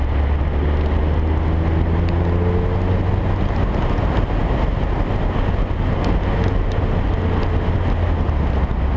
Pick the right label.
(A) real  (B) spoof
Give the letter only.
A